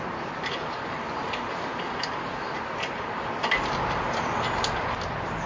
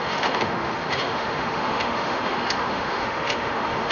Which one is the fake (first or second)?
second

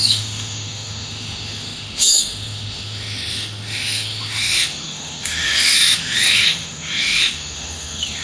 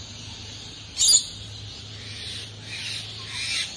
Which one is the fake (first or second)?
first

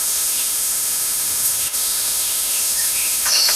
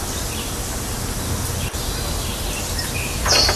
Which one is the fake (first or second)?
first